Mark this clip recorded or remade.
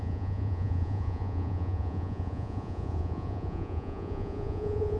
remade